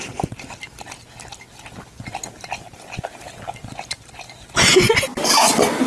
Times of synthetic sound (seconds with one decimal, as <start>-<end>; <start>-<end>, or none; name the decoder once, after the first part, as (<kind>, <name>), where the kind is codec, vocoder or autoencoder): none